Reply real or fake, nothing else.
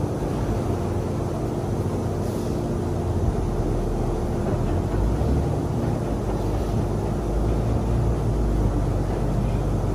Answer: real